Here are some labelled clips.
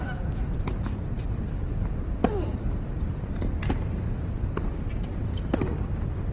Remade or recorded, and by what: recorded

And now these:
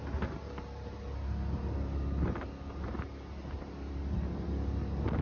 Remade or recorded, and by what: recorded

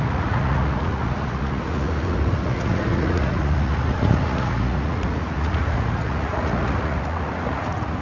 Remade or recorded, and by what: remade, vocoder, Vocos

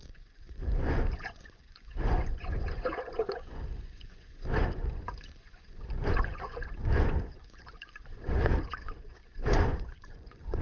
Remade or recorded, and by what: remade, vocoder, Vocos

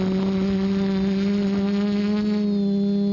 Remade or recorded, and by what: recorded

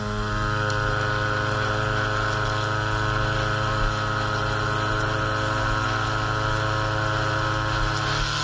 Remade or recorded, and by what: recorded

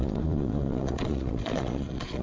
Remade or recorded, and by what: remade, vocoder, Vocos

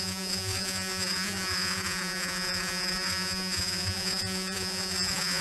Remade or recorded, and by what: remade, vocoder, Vocos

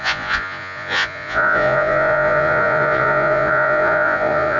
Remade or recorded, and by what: remade, vocoder, Vocos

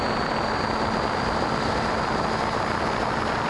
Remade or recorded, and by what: recorded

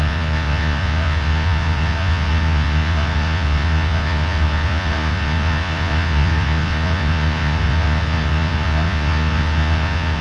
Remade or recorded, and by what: remade, vocoder, Vocos